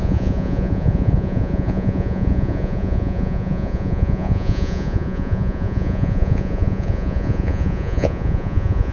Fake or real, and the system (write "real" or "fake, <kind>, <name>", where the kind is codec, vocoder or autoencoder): fake, vocoder, Vocos